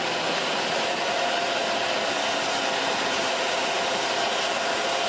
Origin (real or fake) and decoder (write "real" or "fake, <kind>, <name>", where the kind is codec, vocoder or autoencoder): real